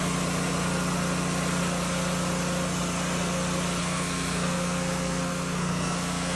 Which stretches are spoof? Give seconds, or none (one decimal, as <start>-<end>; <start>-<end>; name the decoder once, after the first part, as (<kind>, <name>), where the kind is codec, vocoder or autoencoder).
3.8-6.4 (codec, SNAC)